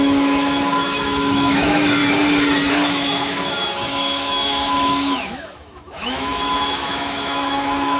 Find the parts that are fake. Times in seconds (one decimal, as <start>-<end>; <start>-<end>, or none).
0.0-2.0; 2.7-8.0